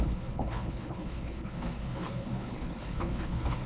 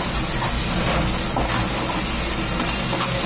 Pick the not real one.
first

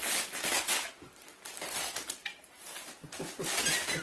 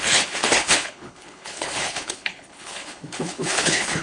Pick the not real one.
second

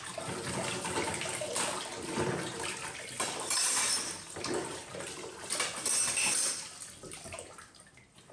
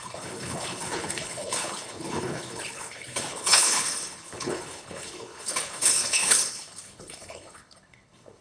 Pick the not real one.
second